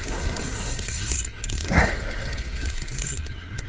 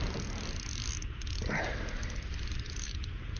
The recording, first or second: second